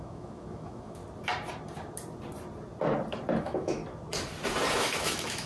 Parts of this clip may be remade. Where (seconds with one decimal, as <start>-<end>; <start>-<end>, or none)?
0.0-1.0; 3.4-3.8; 4.7-5.5